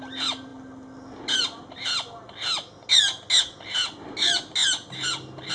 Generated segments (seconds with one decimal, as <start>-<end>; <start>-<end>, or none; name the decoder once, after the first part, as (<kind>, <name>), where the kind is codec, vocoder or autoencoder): none

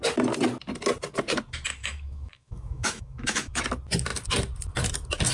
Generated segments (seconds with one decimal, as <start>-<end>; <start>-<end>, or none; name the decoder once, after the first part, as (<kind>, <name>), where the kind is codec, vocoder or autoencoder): 1.8-3.6 (autoencoder, DAC-VAE)

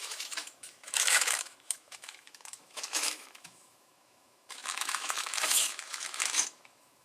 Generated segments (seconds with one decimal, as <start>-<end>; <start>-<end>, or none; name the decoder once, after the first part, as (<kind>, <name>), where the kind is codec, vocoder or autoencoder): 0.0-7.0 (autoencoder, DAC-VAE)

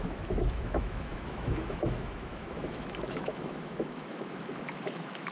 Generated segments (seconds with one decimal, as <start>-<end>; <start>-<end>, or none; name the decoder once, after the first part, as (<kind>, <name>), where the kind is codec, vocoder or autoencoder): 0.0-5.3 (autoencoder, DAC-VAE)

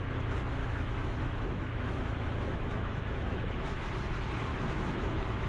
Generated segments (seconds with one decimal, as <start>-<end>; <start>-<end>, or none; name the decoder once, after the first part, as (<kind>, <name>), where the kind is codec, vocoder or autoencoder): 0.6-3.9 (autoencoder, DAC-VAE); 4.5-5.5

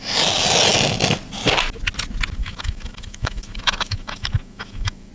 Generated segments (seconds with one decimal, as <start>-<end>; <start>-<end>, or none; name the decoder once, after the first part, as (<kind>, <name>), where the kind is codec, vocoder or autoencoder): 2.4-5.1 (autoencoder, DAC-VAE)

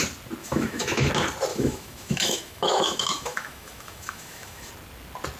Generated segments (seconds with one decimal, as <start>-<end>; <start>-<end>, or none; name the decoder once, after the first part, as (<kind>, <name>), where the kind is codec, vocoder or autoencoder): 0.4-1.1 (autoencoder, DAC-VAE); 1.5-4.7